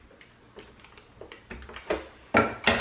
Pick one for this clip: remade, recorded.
recorded